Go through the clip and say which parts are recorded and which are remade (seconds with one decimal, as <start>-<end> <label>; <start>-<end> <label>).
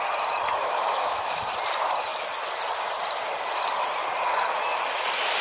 0.0-0.6 recorded; 0.6-1.4 remade; 1.4-5.4 recorded